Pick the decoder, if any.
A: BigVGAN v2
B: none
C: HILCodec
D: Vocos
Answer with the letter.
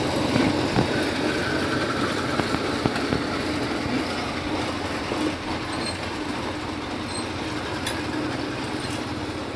B